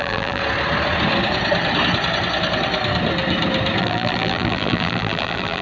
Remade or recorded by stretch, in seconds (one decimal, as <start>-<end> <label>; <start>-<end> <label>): 0.0-0.4 remade; 0.4-3.8 recorded; 3.8-5.6 remade